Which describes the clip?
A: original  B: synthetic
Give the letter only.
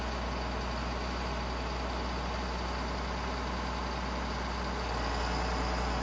A